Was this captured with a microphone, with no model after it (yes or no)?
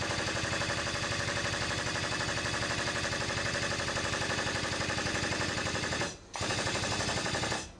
yes